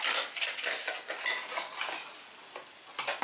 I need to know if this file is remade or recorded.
recorded